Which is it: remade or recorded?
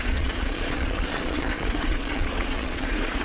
remade